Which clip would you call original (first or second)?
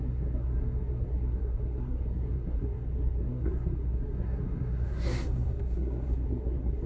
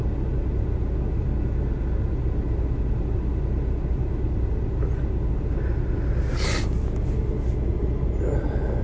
second